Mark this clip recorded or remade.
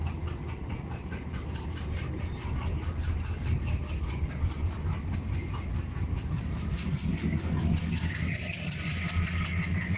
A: recorded